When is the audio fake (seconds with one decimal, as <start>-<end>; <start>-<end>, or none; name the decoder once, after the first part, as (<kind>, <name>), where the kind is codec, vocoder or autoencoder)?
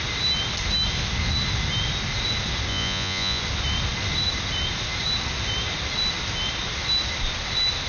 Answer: 2.7-3.4 (vocoder, Vocos)